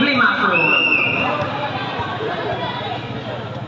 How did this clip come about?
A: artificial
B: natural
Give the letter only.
B